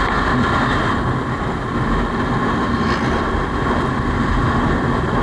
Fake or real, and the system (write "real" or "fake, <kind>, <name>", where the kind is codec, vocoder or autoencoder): real